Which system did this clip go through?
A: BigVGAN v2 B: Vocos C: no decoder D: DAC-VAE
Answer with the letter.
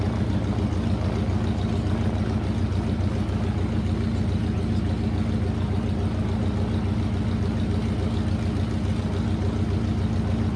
C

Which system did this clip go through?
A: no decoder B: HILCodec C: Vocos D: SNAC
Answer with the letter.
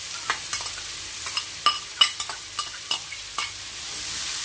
A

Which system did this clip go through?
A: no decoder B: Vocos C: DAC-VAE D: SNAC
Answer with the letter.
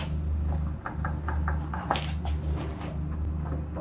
A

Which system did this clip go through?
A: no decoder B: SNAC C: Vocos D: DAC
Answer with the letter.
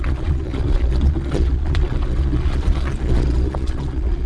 C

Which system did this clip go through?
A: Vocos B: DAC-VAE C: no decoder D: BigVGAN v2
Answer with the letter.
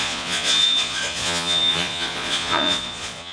A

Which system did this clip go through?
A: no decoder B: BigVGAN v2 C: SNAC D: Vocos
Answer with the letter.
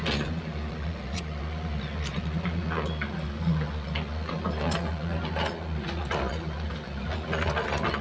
D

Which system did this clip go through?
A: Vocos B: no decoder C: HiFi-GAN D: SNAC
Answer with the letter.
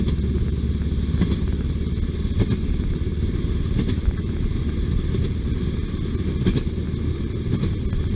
B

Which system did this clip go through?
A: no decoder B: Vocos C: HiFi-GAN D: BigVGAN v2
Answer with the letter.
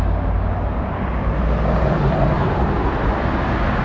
A